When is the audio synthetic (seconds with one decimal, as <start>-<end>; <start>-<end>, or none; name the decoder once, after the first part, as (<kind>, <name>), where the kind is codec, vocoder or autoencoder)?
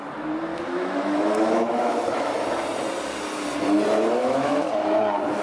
0.5-2.3 (autoencoder, DAC-VAE); 4.2-4.7